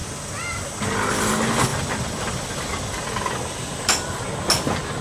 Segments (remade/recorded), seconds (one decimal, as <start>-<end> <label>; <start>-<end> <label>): 0.0-1.7 recorded; 1.7-2.8 remade; 2.8-5.0 recorded